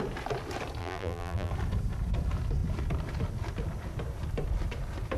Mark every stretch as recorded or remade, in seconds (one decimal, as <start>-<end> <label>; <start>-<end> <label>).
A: 0.0-0.8 recorded; 0.8-1.5 remade; 1.5-5.2 recorded